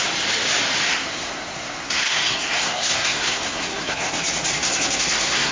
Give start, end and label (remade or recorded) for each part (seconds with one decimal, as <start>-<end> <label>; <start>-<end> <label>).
0.0-0.9 recorded; 0.9-4.1 remade; 4.1-4.5 recorded; 4.5-5.5 remade